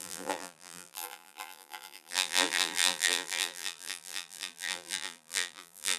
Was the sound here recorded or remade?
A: remade